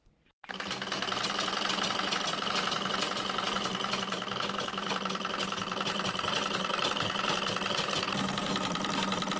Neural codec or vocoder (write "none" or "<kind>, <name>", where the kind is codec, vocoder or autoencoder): none